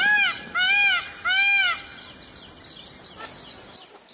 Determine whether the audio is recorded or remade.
recorded